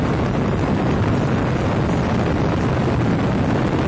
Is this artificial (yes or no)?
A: no